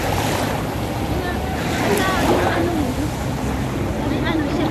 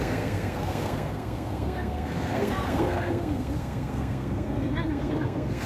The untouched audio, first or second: first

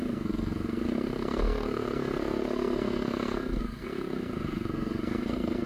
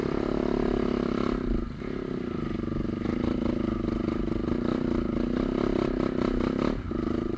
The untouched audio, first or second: second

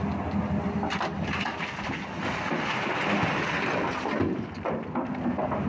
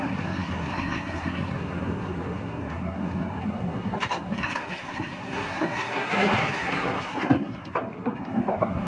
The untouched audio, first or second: first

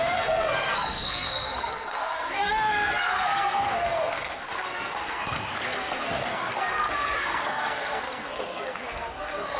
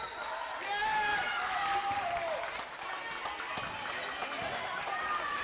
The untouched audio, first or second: second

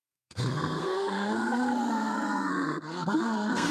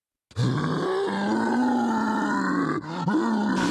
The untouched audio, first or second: second